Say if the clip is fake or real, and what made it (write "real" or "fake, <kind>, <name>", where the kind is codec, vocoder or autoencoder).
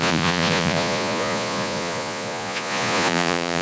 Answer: fake, vocoder, Vocos